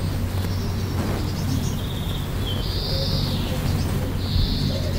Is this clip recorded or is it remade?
recorded